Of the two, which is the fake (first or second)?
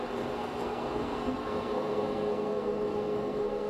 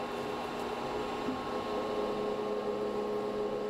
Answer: first